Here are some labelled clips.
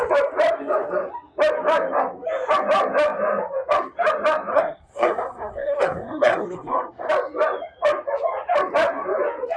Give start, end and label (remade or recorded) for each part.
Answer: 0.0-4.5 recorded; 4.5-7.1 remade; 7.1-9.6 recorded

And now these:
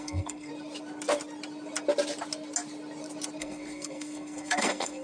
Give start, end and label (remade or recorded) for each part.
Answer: 0.0-0.5 remade; 0.5-3.4 recorded; 3.4-5.0 remade

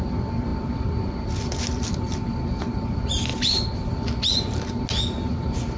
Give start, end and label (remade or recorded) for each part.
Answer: 0.0-5.8 recorded

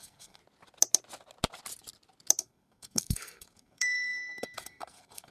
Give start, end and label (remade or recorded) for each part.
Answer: 0.0-0.4 remade; 0.4-2.4 recorded; 2.4-5.3 remade